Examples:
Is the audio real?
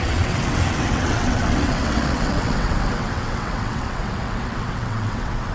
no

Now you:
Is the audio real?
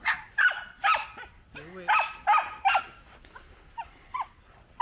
yes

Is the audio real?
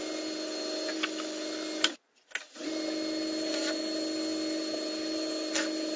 yes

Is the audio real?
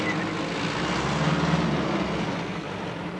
yes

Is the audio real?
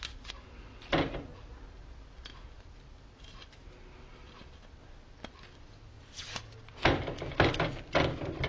yes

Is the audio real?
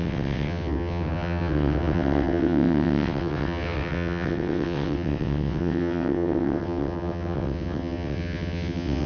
no